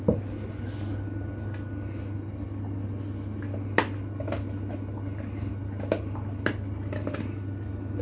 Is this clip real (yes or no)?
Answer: yes